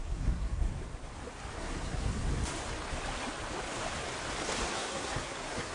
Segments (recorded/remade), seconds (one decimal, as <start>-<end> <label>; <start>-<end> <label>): 0.0-0.7 remade; 0.7-1.6 recorded; 1.6-2.2 remade; 2.2-4.7 recorded; 4.7-5.7 remade